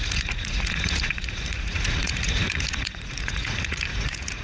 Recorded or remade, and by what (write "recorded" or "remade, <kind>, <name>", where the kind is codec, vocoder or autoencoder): remade, vocoder, Vocos